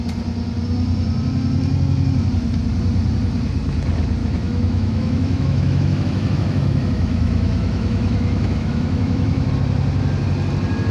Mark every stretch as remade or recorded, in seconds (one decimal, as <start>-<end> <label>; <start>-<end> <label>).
0.0-4.2 recorded; 4.2-9.5 remade; 9.5-10.9 recorded